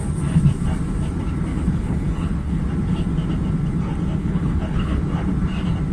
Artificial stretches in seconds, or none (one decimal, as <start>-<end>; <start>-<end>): 1.5-2.6; 4.2-5.0